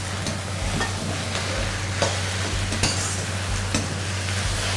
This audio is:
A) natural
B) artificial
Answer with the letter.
A